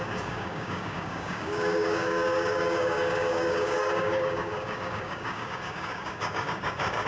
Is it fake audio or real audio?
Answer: fake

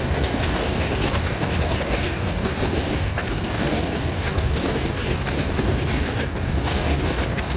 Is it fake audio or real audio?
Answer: fake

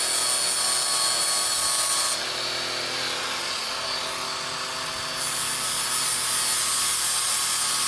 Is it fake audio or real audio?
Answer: real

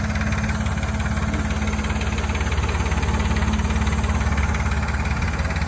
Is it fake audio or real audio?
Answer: real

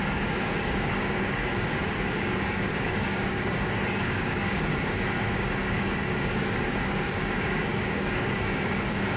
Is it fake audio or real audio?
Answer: fake